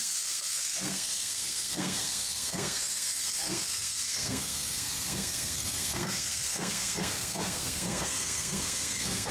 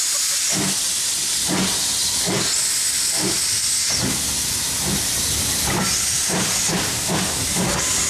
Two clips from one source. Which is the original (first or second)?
second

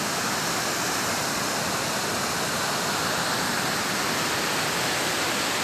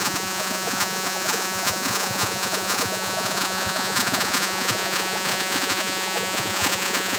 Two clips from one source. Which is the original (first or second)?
first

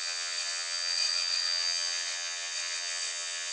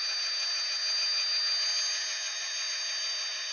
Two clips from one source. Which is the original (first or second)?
second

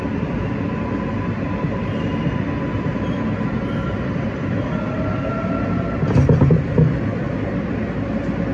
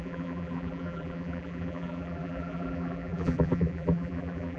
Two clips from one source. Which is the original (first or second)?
first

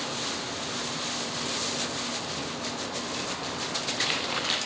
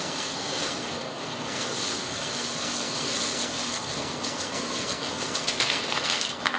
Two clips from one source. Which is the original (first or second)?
first